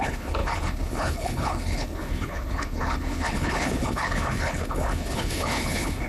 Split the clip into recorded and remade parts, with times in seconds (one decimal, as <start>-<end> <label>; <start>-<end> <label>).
0.0-6.1 remade